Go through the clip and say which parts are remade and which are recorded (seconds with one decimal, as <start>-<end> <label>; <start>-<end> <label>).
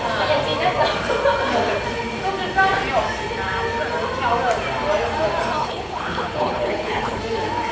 0.0-5.6 recorded; 5.6-7.2 remade; 7.2-7.7 recorded